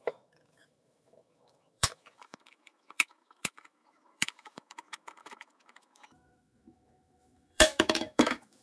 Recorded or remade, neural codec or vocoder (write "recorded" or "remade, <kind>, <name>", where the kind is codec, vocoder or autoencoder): remade, autoencoder, DAC-VAE